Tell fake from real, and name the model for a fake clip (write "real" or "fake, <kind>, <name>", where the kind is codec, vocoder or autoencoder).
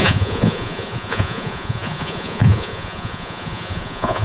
fake, vocoder, Vocos